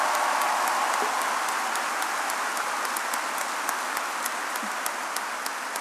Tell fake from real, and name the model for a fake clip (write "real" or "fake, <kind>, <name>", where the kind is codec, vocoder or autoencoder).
real